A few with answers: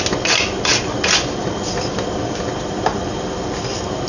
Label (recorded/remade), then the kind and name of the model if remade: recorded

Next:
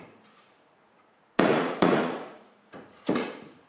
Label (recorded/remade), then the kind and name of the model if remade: remade, vocoder, Vocos